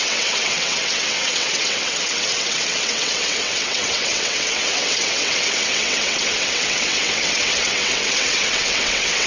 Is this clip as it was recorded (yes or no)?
no